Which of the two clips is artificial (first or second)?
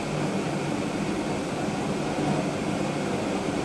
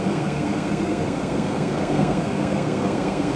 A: second